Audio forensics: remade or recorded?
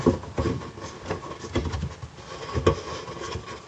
recorded